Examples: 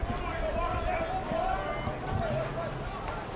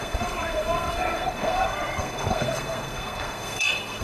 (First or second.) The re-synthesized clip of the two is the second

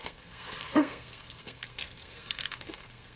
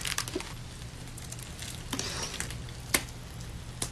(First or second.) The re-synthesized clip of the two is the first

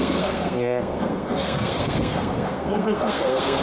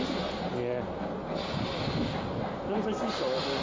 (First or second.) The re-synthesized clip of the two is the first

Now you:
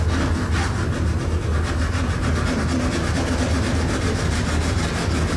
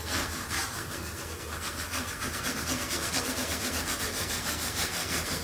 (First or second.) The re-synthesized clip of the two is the second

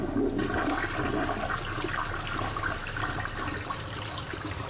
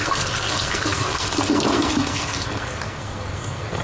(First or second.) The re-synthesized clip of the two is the second